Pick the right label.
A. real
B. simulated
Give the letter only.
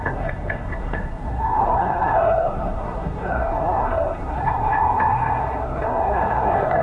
B